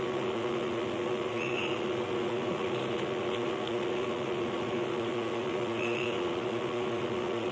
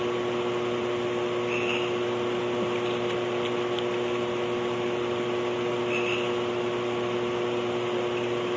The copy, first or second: first